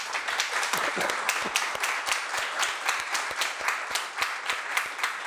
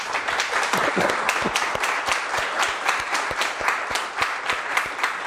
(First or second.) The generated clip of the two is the second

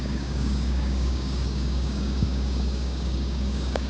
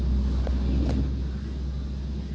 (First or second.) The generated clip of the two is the first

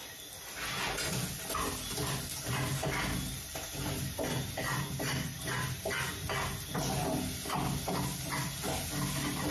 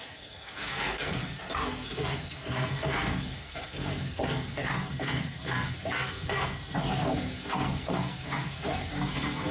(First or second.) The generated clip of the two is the second